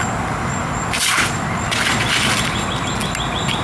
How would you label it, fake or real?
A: real